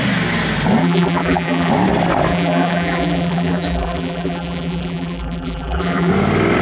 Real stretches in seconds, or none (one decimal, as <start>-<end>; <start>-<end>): 0.0-0.8; 1.7-2.3; 6.1-6.6

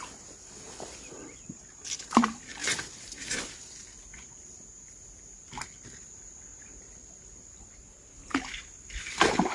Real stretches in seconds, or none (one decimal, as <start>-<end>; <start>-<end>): 0.0-9.5

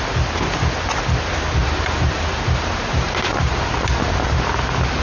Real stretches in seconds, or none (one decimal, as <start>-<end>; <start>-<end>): 0.0-1.6; 3.5-5.0

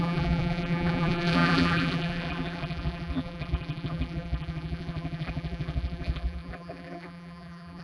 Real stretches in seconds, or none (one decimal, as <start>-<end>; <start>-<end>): none

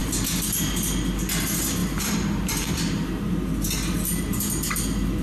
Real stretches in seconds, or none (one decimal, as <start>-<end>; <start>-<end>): 0.0-1.8; 3.2-5.2

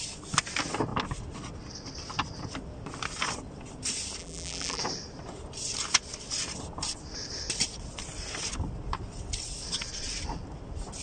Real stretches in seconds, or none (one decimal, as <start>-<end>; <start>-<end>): 0.0-4.2; 4.8-11.0

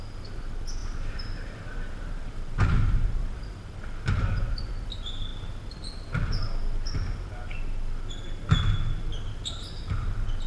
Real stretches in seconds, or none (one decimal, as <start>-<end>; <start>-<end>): 0.0-0.8; 3.4-10.5